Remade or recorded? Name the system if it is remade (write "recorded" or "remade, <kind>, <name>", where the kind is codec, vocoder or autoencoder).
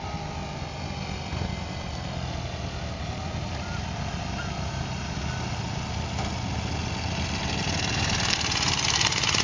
recorded